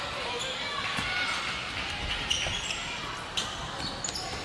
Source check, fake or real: real